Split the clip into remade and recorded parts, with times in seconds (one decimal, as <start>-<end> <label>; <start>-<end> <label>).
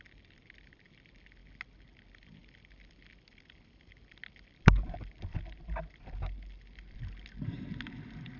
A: 0.0-8.4 recorded